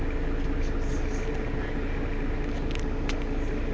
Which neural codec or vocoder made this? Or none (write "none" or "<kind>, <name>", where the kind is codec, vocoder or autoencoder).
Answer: none